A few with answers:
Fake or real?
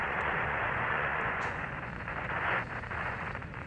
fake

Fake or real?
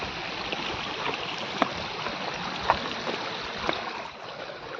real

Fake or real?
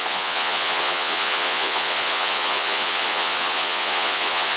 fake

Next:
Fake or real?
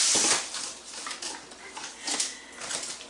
real